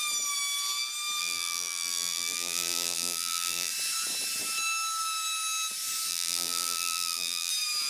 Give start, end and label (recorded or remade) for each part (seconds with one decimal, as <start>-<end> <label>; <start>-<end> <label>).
0.0-1.2 recorded; 1.2-3.7 remade; 3.7-6.1 recorded; 6.1-7.5 remade; 7.5-7.9 recorded